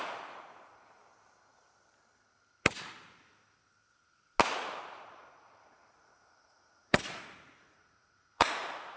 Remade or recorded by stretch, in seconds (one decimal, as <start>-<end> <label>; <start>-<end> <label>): 0.0-1.0 remade; 1.0-5.1 recorded; 5.1-9.0 remade